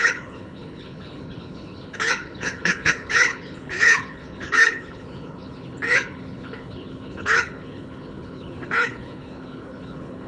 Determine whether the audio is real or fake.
fake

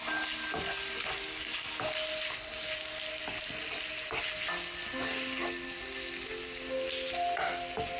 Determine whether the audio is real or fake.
real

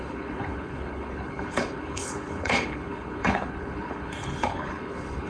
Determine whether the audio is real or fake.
fake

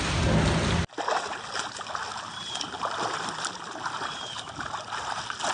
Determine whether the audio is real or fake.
real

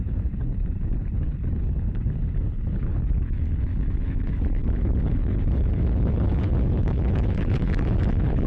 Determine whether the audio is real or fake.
fake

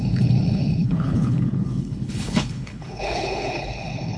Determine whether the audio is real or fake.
fake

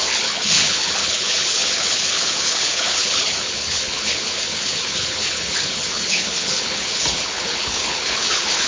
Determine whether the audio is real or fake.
fake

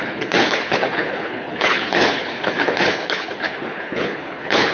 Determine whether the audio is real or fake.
fake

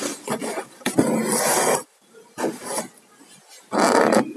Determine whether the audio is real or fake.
real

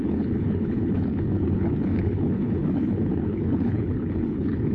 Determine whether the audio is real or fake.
fake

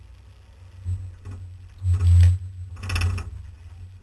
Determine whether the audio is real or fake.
real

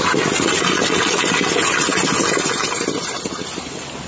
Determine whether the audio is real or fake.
real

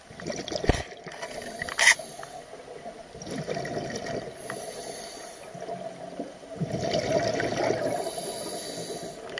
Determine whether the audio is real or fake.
real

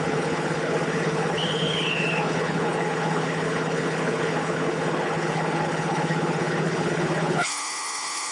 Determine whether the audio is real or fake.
fake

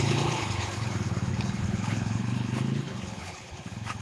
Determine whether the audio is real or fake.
fake